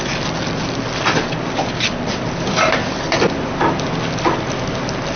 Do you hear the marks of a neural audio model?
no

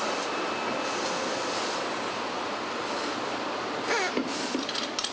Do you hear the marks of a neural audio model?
no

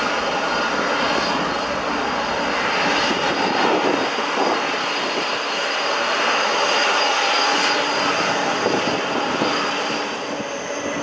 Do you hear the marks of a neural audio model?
no